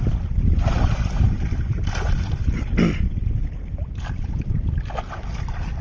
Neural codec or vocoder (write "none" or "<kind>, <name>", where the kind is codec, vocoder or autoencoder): none